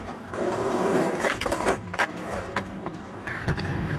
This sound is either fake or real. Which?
fake